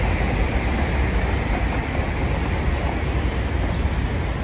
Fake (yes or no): no